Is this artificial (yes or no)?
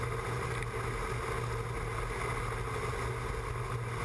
no